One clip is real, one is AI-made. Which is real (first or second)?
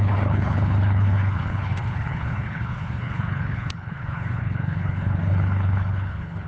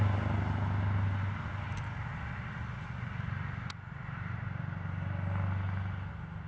second